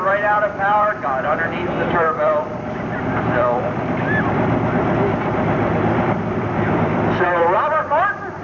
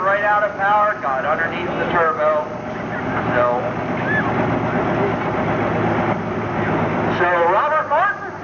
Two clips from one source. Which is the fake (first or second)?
first